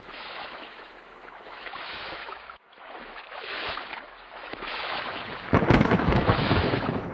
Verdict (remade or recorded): remade